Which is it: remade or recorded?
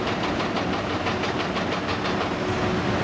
recorded